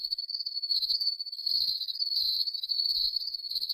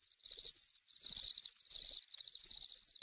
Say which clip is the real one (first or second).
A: second